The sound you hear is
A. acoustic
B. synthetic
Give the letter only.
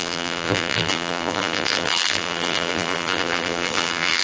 B